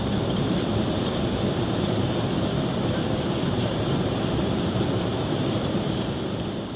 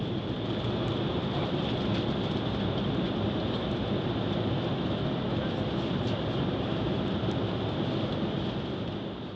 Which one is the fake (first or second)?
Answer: first